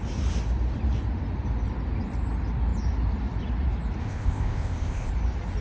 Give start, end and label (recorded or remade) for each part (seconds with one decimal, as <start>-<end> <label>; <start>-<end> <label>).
0.0-4.0 recorded; 4.0-5.1 remade; 5.1-5.6 recorded